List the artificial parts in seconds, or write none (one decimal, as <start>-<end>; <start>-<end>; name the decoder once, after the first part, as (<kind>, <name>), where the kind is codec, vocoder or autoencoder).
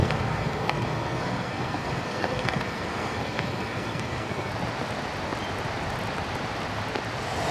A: 0.0-4.5 (codec, SNAC)